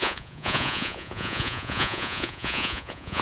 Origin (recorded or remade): remade